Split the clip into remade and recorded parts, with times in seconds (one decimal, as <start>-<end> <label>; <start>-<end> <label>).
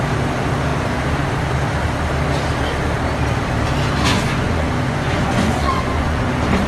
0.0-4.1 recorded; 4.1-6.3 remade; 6.3-6.7 recorded